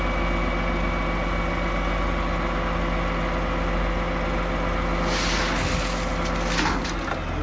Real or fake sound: real